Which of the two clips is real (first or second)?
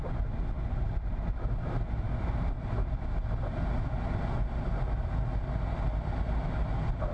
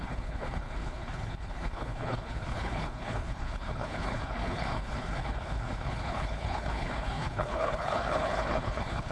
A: first